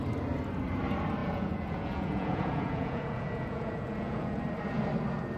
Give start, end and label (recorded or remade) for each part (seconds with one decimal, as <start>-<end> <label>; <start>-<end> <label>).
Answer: 0.0-1.2 recorded; 1.2-4.4 remade; 4.4-5.4 recorded